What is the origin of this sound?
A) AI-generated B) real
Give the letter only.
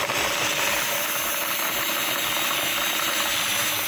B